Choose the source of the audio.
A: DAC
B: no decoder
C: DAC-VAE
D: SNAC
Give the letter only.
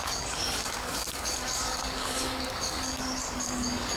A